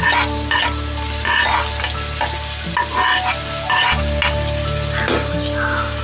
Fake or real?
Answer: real